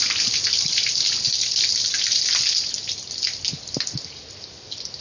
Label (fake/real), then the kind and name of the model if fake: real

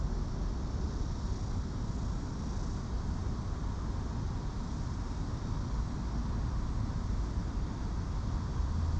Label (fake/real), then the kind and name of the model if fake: real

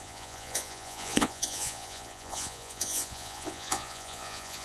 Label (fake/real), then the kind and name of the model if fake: fake, vocoder, Vocos